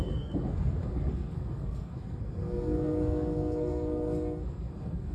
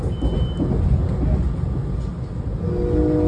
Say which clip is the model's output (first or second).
first